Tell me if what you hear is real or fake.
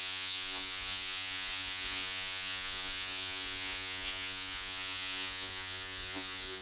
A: fake